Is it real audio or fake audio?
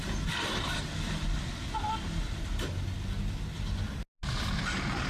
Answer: real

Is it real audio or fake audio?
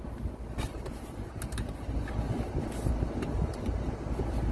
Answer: real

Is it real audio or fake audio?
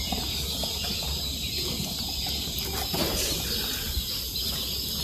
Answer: real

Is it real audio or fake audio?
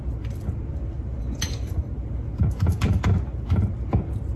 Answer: fake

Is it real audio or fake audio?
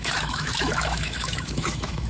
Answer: fake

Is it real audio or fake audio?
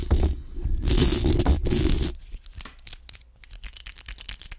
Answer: real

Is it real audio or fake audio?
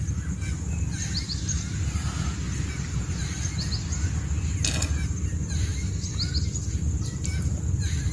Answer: real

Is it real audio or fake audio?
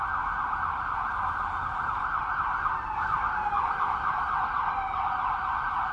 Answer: real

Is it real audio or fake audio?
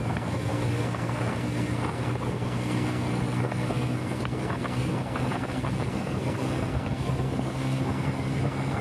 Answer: fake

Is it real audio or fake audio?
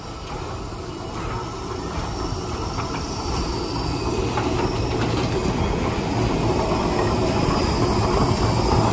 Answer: real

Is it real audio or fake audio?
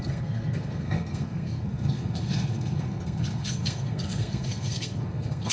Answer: fake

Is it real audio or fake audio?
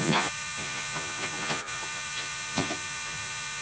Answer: fake